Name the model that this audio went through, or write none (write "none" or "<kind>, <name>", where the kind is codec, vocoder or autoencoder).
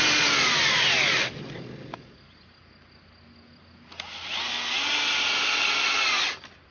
none